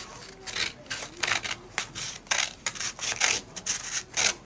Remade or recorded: recorded